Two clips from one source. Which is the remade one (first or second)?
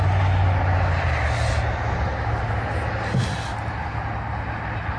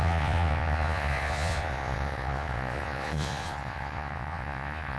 second